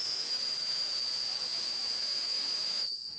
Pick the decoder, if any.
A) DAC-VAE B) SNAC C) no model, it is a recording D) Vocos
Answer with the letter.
A